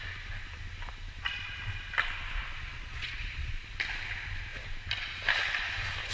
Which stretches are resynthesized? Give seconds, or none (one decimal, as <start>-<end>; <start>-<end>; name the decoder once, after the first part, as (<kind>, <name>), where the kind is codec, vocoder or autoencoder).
2.4-3.5 (vocoder, Vocos)